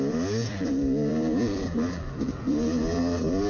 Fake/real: fake